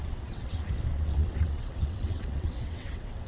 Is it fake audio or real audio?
fake